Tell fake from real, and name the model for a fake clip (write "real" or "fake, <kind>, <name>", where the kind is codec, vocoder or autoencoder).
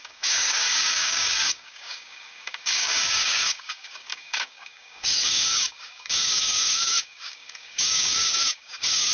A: fake, codec, DAC